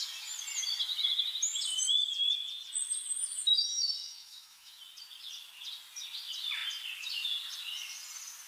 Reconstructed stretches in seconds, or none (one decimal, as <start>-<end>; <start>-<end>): 3.7-4.8